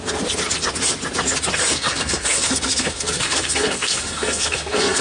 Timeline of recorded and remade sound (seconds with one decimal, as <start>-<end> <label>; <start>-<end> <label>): 0.0-1.7 recorded; 1.7-5.0 remade